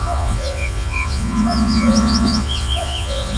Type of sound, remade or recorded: remade